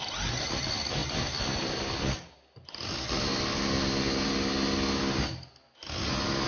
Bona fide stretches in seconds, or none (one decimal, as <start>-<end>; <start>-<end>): 0.0-6.5

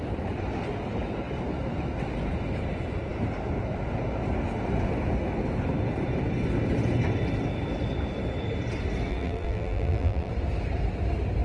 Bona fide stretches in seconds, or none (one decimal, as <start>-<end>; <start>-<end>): 0.0-9.1; 10.3-11.4

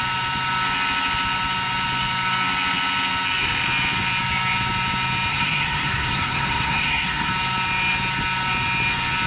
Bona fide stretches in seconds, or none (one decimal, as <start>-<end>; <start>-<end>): 0.0-5.3; 7.3-9.3